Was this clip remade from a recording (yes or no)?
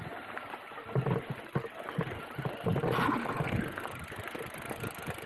no